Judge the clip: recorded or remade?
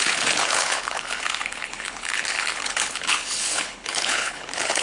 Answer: remade